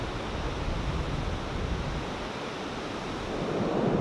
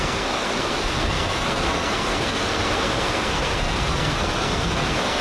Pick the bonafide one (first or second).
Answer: first